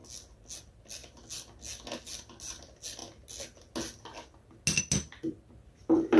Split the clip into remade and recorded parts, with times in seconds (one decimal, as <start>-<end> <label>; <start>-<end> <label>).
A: 0.0-6.2 recorded